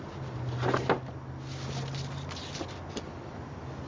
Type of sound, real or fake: real